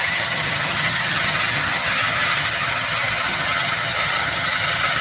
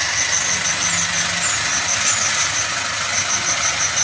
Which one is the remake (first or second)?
first